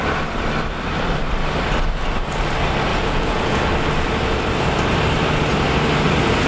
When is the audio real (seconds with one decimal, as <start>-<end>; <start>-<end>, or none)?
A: 0.0-2.9; 3.6-6.5